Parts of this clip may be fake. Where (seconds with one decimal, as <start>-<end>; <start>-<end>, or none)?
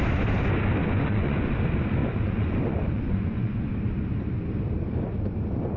0.8-1.5; 2.0-3.7